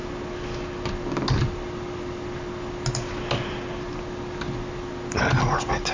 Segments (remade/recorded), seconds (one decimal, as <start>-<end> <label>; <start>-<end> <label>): 0.0-5.9 recorded